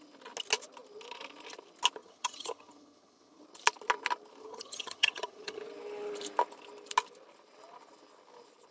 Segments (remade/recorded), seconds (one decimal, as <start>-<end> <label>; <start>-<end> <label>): 0.0-2.0 recorded; 2.0-3.4 remade; 3.4-4.4 recorded; 4.4-5.6 remade; 5.6-8.7 recorded